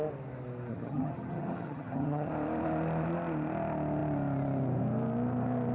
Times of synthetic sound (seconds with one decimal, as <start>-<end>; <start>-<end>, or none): 0.7-2.3